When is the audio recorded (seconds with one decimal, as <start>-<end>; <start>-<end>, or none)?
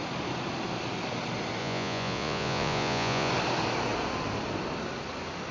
0.0-1.6; 3.3-5.5